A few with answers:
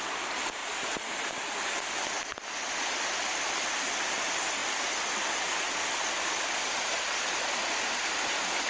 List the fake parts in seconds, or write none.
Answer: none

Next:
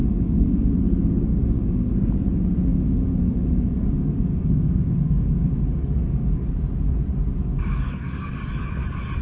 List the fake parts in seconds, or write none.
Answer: 0.0-0.7 (codec, DAC); 1.3-1.9; 2.7-6.5; 7.5-8.5

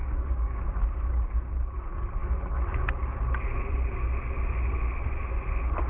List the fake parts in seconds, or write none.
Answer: 0.0-0.6 (codec, DAC)